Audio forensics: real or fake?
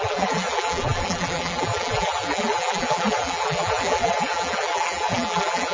fake